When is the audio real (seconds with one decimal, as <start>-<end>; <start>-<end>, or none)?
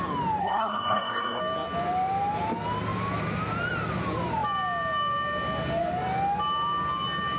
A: 0.0-0.4; 1.4-7.4